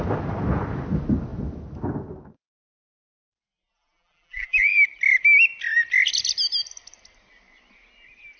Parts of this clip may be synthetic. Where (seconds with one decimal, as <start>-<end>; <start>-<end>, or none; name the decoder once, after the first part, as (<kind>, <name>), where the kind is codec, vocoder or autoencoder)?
3.7-4.6 (vocoder, BigVGAN v2)